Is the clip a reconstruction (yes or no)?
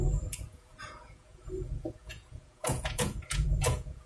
yes